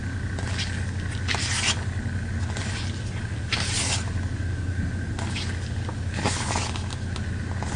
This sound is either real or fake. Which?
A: real